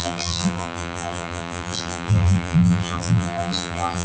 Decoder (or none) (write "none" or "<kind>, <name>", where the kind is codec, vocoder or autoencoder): vocoder, BigVGAN v2